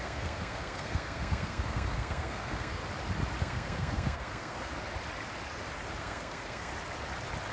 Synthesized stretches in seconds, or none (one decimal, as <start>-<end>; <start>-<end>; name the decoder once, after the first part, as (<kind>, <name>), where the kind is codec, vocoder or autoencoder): 0.0-2.8 (codec, SNAC); 3.4-4.7; 6.0-6.7